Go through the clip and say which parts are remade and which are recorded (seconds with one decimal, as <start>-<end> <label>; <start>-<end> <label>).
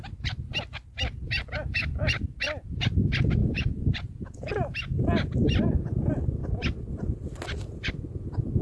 0.0-3.4 recorded; 3.4-4.5 remade; 4.5-8.6 recorded